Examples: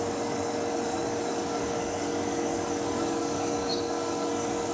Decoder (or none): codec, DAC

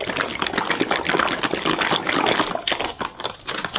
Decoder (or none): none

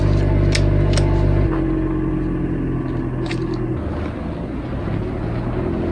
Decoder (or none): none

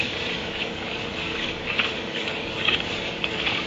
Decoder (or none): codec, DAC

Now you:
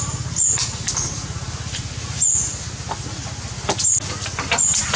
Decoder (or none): none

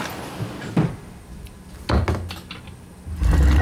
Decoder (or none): none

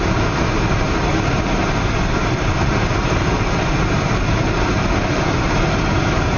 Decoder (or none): none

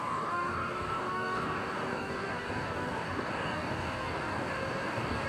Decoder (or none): codec, DAC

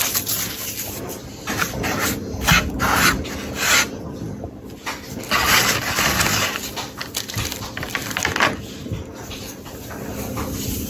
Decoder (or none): none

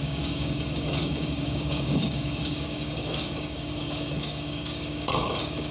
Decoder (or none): codec, DAC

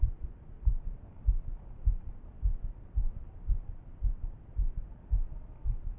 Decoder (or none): none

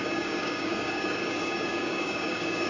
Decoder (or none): codec, DAC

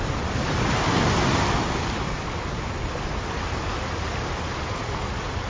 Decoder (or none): none